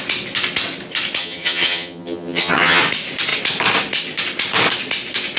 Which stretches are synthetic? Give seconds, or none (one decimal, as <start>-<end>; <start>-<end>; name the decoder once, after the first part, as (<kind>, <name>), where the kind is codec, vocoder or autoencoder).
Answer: 1.2-2.8 (vocoder, HiFi-GAN)